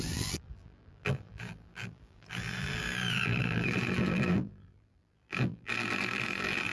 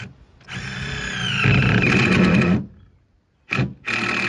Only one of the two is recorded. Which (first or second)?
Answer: second